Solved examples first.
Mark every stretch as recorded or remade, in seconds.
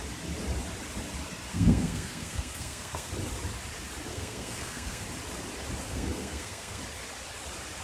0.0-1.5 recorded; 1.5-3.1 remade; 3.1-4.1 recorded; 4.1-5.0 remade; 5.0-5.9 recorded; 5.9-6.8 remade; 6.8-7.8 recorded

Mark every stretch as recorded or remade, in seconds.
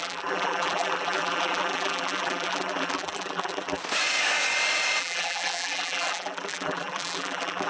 0.0-3.8 remade; 3.8-5.0 recorded; 5.0-7.7 remade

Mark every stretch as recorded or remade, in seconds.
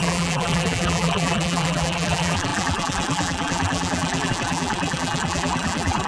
0.0-6.1 remade